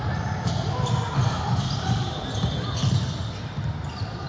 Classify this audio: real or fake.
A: real